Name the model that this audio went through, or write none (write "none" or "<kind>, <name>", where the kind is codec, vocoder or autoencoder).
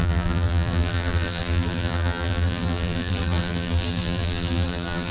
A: vocoder, BigVGAN v2